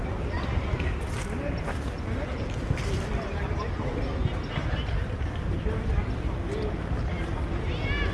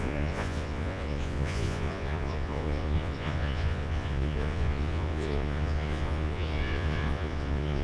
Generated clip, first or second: second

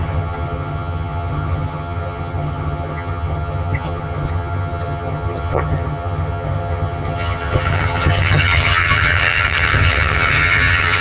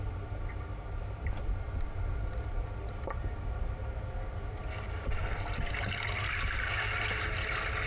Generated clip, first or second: first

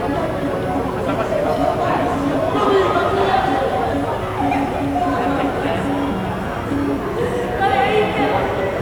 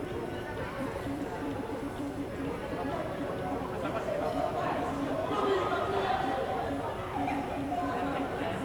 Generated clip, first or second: second